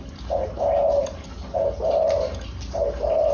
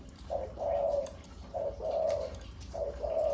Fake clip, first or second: second